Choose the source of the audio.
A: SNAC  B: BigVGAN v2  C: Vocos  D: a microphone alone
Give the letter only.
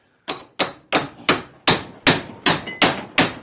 D